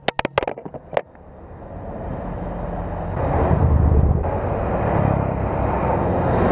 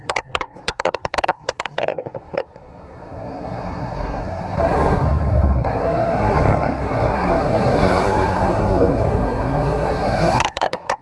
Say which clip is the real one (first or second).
first